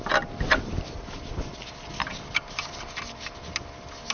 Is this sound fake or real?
real